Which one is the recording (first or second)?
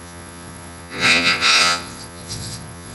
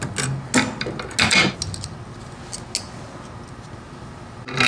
second